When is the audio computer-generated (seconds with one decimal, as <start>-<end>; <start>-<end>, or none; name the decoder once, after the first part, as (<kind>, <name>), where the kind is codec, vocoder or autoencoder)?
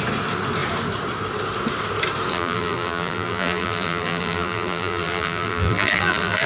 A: 2.3-6.5 (vocoder, BigVGAN v2)